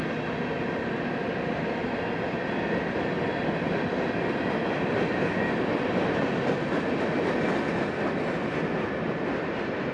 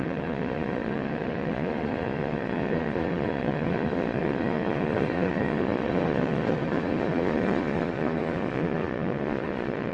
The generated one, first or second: second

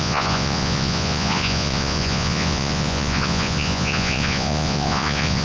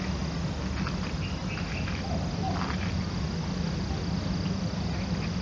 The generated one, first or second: first